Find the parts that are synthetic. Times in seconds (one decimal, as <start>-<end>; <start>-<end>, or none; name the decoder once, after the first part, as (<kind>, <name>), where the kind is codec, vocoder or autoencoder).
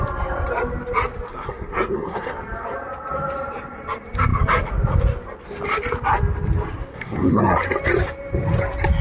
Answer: 1.3-2.3 (codec, SNAC); 6.9-7.4